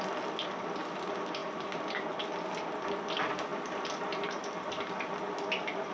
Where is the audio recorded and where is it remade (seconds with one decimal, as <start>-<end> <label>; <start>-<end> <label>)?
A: 0.0-5.9 recorded